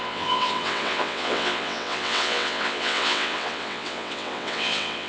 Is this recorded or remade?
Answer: remade